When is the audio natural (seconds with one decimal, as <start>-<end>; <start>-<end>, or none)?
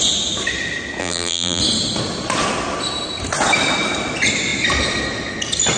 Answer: 0.0-1.0; 1.6-5.8